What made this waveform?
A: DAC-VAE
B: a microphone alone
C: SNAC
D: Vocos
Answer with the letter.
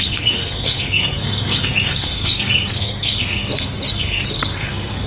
C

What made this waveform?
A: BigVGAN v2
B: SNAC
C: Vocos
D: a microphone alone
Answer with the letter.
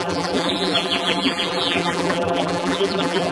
A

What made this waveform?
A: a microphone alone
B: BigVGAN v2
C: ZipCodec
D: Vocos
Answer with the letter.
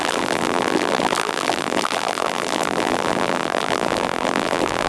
B